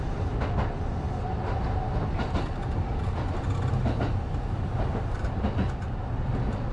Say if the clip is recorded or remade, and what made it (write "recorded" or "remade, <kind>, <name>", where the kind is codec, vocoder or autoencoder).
recorded